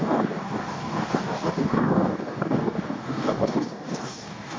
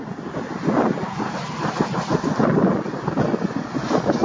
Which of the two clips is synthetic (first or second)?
first